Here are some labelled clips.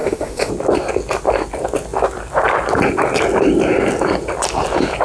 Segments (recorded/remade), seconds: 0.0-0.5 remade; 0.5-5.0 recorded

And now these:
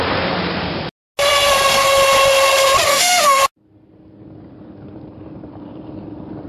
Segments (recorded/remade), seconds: 0.0-2.9 recorded; 2.9-3.4 remade; 3.4-6.5 recorded

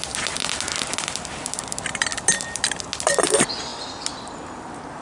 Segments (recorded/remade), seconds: 0.0-5.0 recorded

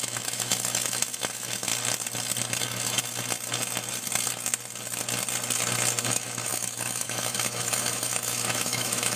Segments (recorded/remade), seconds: 0.0-1.7 remade; 1.7-2.6 recorded; 2.6-3.0 remade; 3.0-6.0 recorded; 6.0-9.2 remade